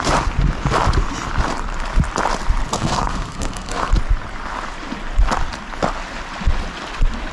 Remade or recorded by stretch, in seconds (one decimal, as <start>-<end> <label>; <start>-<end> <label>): 0.0-2.7 recorded; 2.7-3.9 remade; 3.9-7.3 recorded